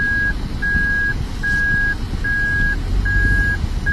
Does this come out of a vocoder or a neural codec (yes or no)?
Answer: no